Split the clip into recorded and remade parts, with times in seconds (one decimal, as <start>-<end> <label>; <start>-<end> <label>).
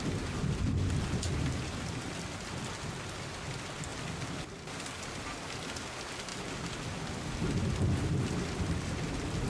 0.0-9.5 recorded